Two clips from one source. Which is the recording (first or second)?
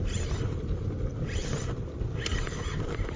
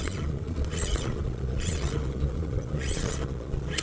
first